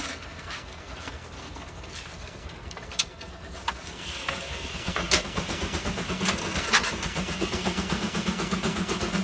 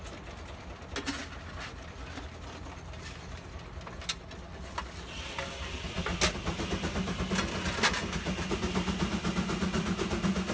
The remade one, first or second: first